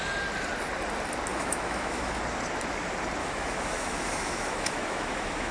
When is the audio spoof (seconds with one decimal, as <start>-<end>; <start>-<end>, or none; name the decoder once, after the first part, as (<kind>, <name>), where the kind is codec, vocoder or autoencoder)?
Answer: 1.3-2.2 (autoencoder, DAC-VAE); 3.2-5.5